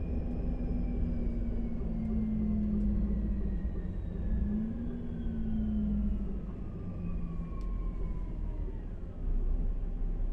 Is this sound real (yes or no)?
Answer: yes